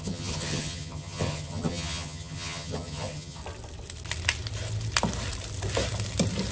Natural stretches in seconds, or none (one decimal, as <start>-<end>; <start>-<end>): 3.4-6.5